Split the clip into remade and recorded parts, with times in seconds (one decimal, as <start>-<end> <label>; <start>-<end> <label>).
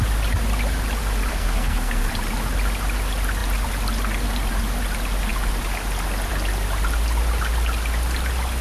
0.0-1.3 recorded; 1.3-2.1 remade; 2.1-8.6 recorded